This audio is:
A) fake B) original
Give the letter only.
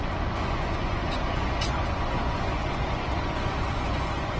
A